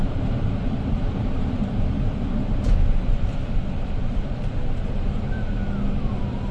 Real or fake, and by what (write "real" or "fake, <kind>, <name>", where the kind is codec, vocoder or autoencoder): fake, vocoder, BigVGAN v2